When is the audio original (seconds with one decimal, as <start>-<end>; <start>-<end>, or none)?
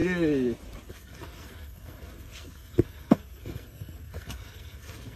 0.0-0.9